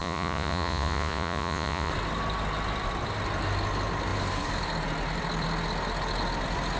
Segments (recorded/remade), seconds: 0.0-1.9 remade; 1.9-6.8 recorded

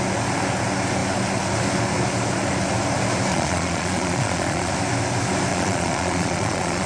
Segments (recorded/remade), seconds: 0.0-3.3 recorded; 3.3-4.7 remade; 4.7-5.5 recorded; 5.5-6.9 remade

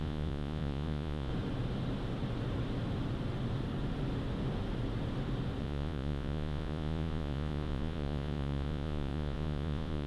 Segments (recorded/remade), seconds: 0.0-1.3 remade; 1.3-5.6 recorded; 5.6-10.1 remade

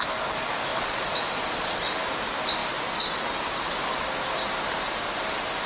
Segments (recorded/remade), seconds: 0.0-0.7 recorded; 0.7-1.8 remade; 1.8-5.7 recorded